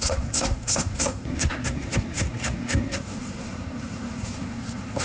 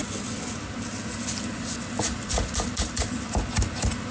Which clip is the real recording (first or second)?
second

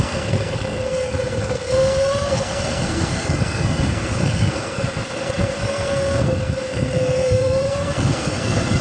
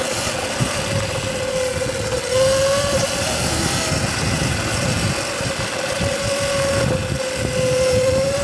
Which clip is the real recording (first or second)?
second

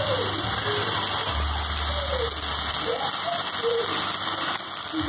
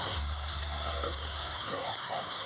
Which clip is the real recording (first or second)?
first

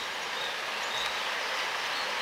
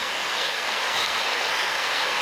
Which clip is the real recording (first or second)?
first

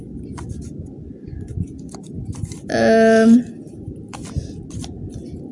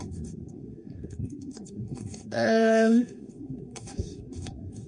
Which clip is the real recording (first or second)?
first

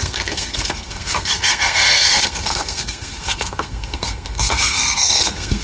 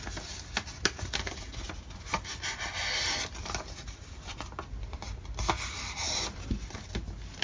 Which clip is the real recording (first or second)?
second